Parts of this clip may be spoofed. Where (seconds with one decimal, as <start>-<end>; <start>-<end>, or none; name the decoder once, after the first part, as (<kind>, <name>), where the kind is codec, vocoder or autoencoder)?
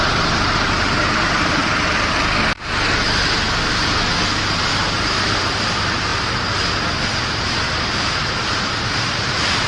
0.0-1.6 (vocoder, BigVGAN v2); 5.0-6.1; 7.1-9.7